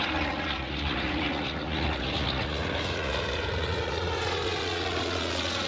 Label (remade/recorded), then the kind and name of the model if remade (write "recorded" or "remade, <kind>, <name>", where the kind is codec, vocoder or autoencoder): remade, vocoder, Vocos